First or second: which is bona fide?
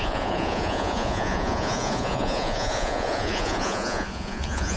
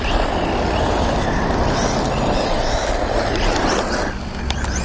second